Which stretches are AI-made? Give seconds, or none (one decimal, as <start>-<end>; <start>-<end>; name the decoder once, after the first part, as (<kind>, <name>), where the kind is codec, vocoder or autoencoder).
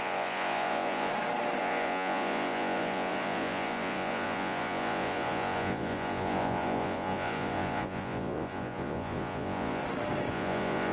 0.0-1.1 (vocoder, Vocos); 1.6-9.8; 10.3-10.9